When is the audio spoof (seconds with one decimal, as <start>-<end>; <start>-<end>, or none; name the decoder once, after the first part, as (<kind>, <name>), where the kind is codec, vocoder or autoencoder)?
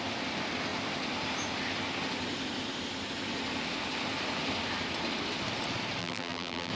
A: 6.0-6.7 (vocoder, BigVGAN v2)